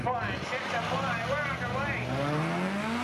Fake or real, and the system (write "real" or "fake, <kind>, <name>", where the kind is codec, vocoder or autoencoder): real